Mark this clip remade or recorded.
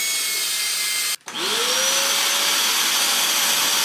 recorded